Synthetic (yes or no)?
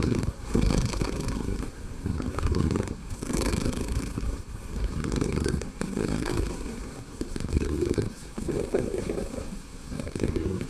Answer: yes